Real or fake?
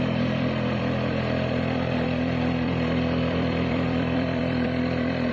fake